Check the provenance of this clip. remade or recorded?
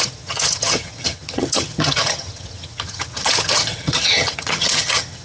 remade